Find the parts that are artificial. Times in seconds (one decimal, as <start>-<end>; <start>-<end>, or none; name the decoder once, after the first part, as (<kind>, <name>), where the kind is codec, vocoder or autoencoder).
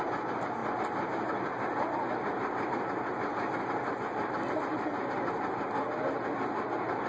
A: none